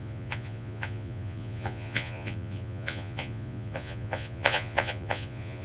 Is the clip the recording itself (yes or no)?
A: no